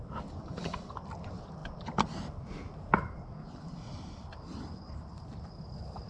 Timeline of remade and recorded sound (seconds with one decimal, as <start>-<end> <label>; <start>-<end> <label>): 0.0-6.1 recorded